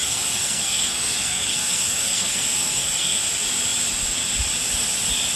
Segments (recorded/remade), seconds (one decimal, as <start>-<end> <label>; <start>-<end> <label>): 0.0-3.2 remade; 3.2-5.4 recorded